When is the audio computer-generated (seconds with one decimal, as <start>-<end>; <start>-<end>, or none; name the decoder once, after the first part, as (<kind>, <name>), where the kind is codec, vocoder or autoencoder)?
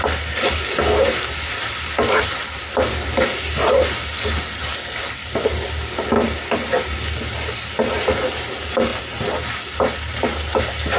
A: none